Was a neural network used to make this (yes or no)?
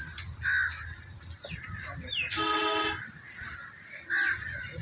no